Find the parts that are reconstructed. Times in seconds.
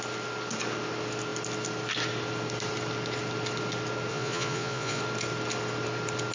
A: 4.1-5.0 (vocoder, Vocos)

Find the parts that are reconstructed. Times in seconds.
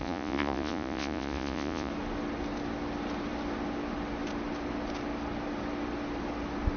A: 0.0-1.9 (vocoder, Vocos)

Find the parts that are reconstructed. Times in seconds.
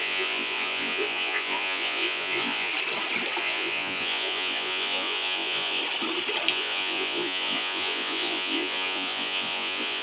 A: 0.0-2.7 (vocoder, Vocos); 3.4-5.8; 6.5-10.0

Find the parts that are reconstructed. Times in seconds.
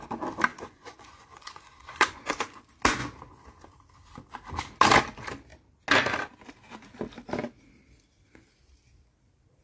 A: 0.5-2.6 (vocoder, Vocos)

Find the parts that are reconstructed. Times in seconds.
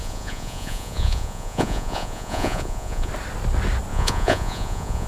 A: 0.0-3.1 (vocoder, Vocos); 3.9-5.1